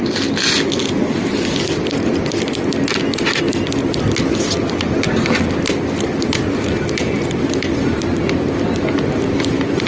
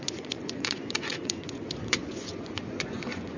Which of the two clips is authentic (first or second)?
first